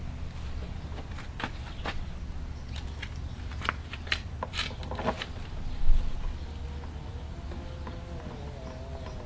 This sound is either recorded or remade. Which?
recorded